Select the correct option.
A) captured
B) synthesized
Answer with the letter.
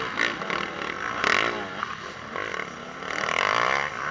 A